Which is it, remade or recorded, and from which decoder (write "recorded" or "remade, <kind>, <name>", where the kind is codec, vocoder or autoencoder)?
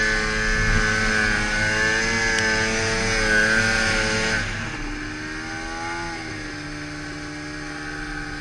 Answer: recorded